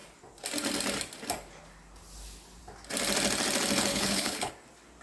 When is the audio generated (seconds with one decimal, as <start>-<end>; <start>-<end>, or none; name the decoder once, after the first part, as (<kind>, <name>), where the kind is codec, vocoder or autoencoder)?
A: 3.9-4.5 (codec, HILCodec)